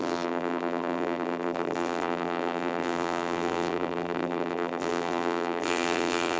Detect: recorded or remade remade